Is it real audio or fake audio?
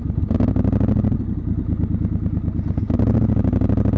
real